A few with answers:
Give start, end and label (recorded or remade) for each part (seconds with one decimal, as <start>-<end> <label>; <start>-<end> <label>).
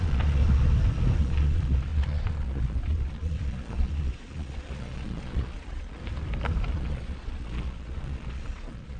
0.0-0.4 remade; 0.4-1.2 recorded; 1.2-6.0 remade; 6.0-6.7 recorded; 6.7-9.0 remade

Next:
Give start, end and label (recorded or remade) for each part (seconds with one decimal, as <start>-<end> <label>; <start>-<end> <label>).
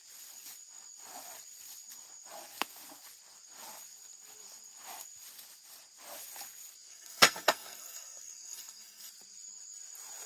0.0-6.9 recorded; 6.9-9.1 remade; 9.1-10.3 recorded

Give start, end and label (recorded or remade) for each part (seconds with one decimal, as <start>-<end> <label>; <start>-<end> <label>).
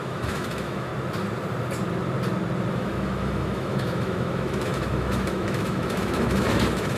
0.0-0.9 remade; 0.9-2.7 recorded; 2.7-7.0 remade